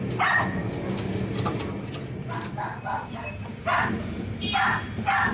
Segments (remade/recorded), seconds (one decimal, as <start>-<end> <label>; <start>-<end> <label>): 0.0-5.3 recorded